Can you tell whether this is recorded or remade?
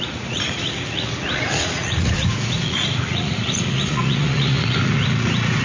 remade